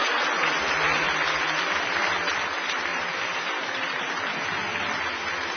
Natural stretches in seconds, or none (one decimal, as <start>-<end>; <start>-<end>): 0.0-2.9; 4.0-5.6